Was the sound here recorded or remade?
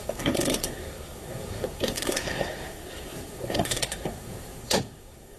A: remade